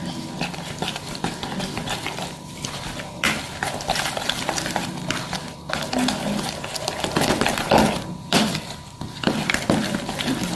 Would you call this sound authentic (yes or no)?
no